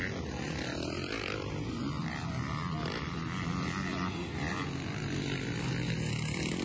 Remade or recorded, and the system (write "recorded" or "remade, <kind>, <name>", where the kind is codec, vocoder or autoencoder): recorded